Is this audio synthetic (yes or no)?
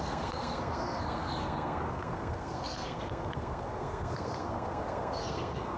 yes